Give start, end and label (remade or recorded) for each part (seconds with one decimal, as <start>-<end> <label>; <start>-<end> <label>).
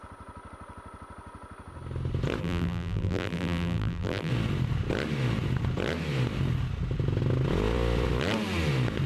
0.0-2.4 recorded; 2.4-4.3 remade; 4.3-9.1 recorded